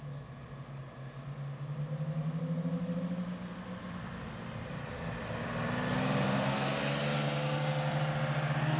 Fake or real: real